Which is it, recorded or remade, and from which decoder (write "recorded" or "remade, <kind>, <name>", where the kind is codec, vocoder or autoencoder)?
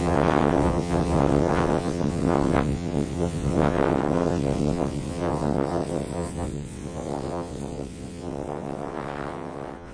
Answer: remade, vocoder, WaveNeXt